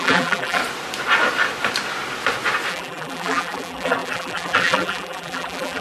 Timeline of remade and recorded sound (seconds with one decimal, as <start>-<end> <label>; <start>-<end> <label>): 0.0-0.6 remade; 0.6-2.7 recorded; 2.7-5.8 remade

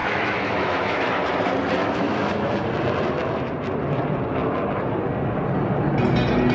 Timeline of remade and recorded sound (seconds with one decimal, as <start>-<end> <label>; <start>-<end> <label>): 0.0-1.1 remade; 1.1-1.8 recorded; 1.8-2.6 remade; 2.6-6.5 recorded

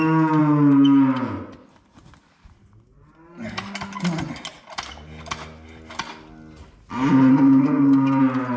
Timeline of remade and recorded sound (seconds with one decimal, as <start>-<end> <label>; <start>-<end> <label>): 0.0-7.3 recorded; 7.3-8.2 remade; 8.2-8.6 recorded

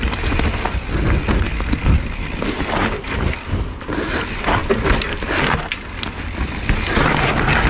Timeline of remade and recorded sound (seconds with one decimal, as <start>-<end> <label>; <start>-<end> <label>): 0.0-7.7 recorded

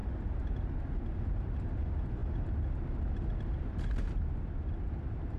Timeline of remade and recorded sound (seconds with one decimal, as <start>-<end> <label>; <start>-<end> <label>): 0.0-1.4 recorded; 1.4-2.2 remade; 2.2-5.4 recorded